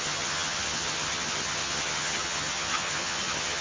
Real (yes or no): no